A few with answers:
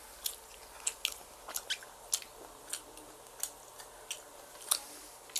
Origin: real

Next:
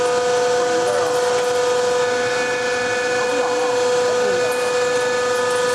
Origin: real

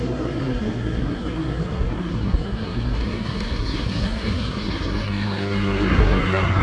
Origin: fake